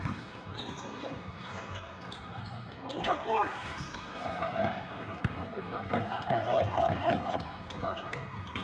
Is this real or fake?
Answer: fake